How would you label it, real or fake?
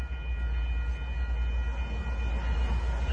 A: real